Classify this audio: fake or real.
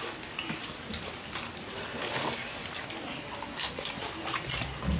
real